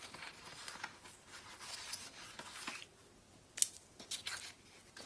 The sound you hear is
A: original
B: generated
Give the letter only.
A